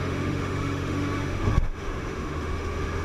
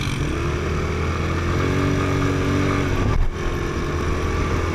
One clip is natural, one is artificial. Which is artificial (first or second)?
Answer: first